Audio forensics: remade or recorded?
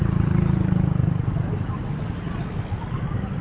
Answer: recorded